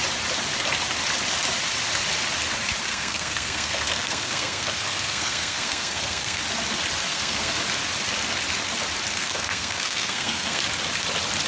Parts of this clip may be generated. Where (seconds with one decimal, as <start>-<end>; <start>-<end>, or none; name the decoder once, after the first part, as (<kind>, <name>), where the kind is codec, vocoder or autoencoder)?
2.9-6.4 (codec, SNAC); 7.1-7.6; 9.2-10.6

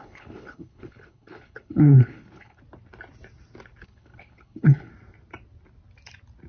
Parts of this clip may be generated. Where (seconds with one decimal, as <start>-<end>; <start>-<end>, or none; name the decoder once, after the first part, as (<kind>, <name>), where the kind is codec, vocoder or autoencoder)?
0.0-2.6 (codec, HILCodec); 3.8-4.9

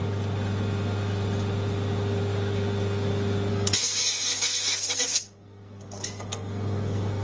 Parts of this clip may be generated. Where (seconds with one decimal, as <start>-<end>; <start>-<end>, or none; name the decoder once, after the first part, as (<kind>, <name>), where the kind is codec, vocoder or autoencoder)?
3.5-7.2 (codec, SNAC)

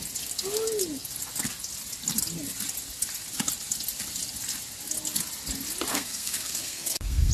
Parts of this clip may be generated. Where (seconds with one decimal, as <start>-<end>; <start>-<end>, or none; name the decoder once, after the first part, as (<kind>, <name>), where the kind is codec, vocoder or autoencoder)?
5.9-7.3 (codec, SNAC)

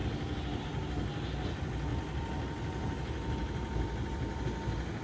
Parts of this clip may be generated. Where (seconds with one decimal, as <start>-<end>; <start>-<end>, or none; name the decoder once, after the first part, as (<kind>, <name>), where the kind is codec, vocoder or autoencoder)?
none